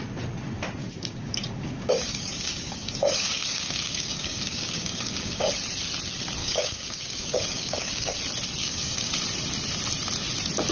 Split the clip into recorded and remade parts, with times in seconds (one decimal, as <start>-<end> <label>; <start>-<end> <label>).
0.0-0.8 recorded; 0.8-5.5 remade; 5.5-6.4 recorded; 6.4-8.2 remade; 8.2-8.6 recorded; 8.6-9.1 remade; 9.1-10.7 recorded